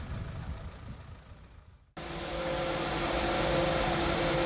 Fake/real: real